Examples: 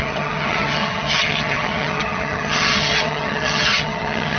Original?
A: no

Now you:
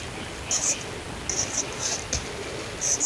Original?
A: yes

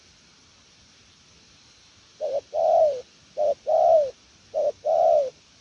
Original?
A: yes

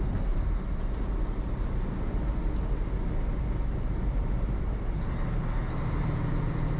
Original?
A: yes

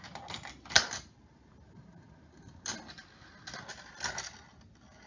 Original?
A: yes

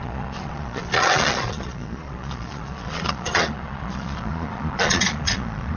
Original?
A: no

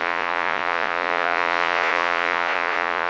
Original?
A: no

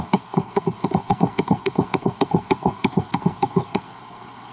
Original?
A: no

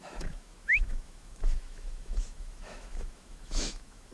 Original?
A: no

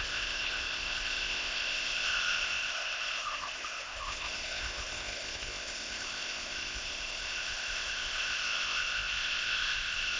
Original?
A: no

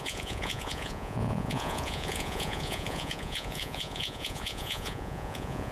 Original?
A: no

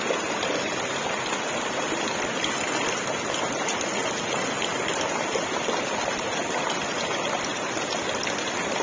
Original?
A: yes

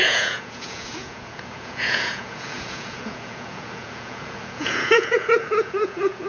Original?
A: no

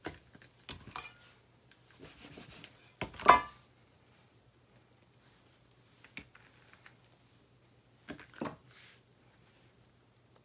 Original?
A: yes